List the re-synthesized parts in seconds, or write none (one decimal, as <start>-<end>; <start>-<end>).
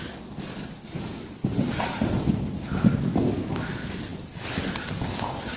0.0-1.4; 3.0-5.6